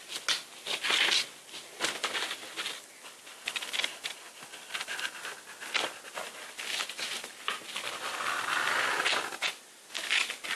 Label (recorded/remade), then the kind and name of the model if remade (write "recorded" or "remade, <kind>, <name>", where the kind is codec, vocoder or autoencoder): recorded